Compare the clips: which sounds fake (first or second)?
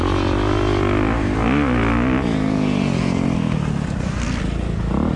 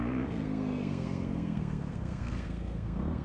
second